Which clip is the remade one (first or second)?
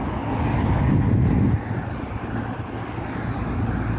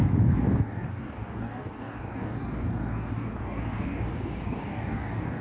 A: second